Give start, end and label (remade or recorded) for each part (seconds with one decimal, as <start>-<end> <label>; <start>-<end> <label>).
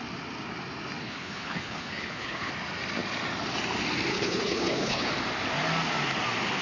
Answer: 0.0-1.0 recorded; 1.0-2.5 remade; 2.5-4.1 recorded; 4.1-5.1 remade; 5.1-6.6 recorded